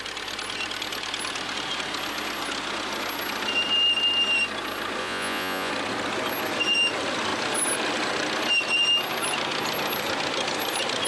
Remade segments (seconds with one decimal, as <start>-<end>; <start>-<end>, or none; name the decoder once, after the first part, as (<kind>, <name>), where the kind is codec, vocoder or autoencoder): 5.0-5.7 (vocoder, Vocos)

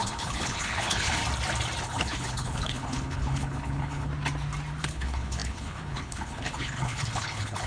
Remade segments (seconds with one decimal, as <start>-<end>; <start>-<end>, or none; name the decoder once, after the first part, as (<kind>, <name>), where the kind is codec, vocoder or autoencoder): 0.0-1.2 (codec, HILCodec); 1.8-4.1; 4.8-7.7

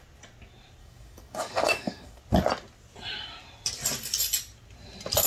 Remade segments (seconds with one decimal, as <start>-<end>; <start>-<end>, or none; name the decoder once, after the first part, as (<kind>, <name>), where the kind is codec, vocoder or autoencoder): 0.8-2.2 (codec, DAC)

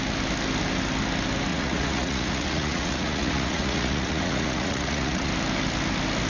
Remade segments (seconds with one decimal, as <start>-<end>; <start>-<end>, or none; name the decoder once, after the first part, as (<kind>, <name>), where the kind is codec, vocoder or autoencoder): 1.5-5.3 (vocoder, Vocos)

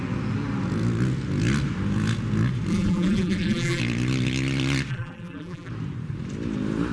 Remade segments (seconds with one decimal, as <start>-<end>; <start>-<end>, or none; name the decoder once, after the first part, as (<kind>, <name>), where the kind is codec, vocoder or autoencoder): 2.7-3.8 (vocoder, BigVGAN v2); 4.9-5.7

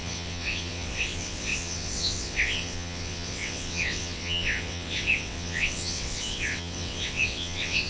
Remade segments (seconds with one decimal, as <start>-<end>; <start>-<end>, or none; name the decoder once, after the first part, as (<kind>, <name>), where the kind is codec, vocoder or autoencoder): 0.0-7.9 (vocoder, WaveNeXt)

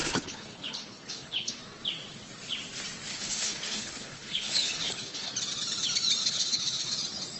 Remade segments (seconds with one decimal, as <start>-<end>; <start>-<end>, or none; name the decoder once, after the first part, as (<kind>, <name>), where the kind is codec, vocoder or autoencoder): 0.0-1.6 (codec, HILCodec); 3.1-5.3; 6.2-6.9

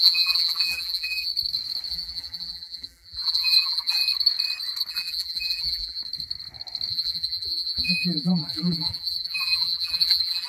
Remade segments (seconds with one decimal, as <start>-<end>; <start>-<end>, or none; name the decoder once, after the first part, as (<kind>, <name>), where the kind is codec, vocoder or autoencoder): 0.0-1.3 (vocoder, BigVGAN v2); 1.9-4.0; 4.9-6.0; 6.9-10.5